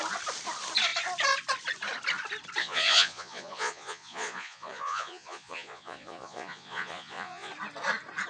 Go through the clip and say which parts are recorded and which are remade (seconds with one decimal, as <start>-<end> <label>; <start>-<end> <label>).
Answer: 0.0-2.6 recorded; 2.6-7.5 remade; 7.5-8.3 recorded